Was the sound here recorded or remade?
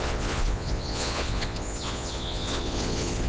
remade